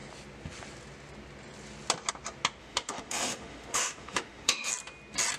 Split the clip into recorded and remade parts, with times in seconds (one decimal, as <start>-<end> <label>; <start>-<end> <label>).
0.0-2.6 recorded; 2.6-4.7 remade; 4.7-5.4 recorded